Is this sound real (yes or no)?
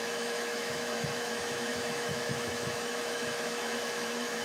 no